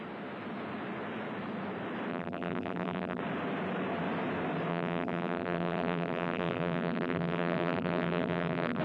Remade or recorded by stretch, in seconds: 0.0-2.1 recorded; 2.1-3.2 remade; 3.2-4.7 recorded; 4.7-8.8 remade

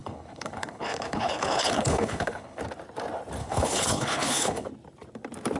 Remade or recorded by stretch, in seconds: 0.0-2.6 remade; 2.6-3.4 recorded; 3.4-4.7 remade; 4.7-5.6 recorded